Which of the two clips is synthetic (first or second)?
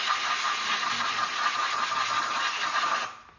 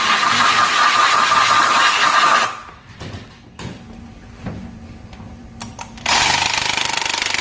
second